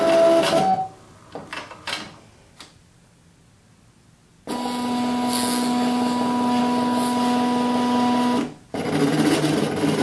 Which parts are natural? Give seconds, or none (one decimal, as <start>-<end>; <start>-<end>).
0.0-10.0